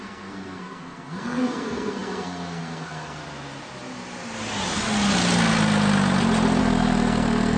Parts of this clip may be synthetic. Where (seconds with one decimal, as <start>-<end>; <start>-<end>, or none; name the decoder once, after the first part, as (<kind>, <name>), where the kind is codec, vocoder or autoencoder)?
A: 0.0-3.2 (codec, SNAC); 6.6-7.6